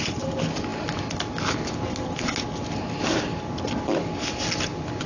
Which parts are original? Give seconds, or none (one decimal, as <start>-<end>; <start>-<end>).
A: 0.0-5.1